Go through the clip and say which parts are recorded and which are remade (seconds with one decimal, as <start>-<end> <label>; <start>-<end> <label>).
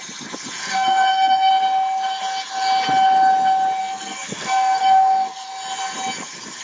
0.0-0.6 recorded; 0.6-1.5 remade; 1.5-3.8 recorded; 3.8-5.5 remade; 5.5-6.6 recorded